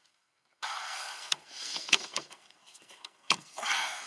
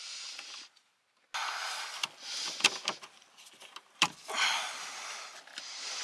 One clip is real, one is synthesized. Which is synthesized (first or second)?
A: first